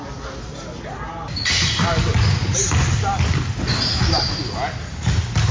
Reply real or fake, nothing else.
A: real